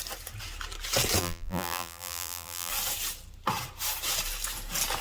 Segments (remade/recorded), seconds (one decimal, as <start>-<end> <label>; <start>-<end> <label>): 0.0-1.2 recorded; 1.2-2.7 remade; 2.7-5.0 recorded